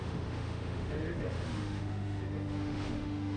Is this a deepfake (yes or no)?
yes